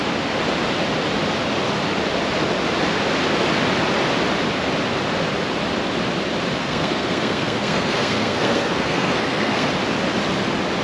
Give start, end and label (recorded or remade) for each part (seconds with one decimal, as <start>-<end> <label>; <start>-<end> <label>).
0.0-6.6 recorded; 6.6-9.7 remade; 9.7-10.8 recorded